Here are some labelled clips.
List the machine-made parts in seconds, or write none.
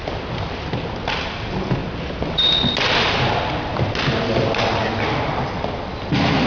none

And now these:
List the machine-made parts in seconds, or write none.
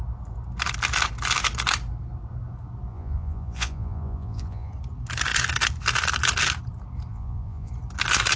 2.9-4.7; 7.1-7.7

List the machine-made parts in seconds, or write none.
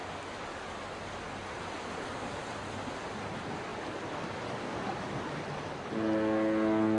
none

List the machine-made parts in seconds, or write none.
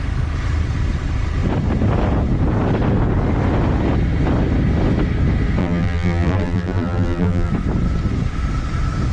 5.6-7.5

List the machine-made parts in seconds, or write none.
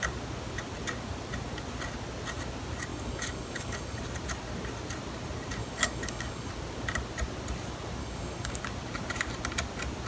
2.9-4.0; 5.6-6.5; 8.0-8.6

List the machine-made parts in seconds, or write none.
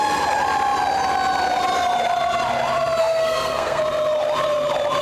3.0-3.8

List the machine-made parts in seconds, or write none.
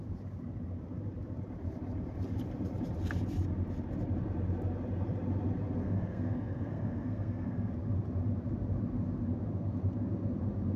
5.8-7.7